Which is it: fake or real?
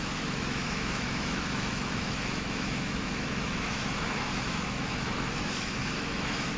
fake